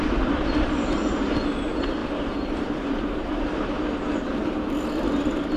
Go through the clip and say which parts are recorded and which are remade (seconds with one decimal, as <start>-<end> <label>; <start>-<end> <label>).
0.0-1.0 remade; 1.0-1.6 recorded; 1.6-5.6 remade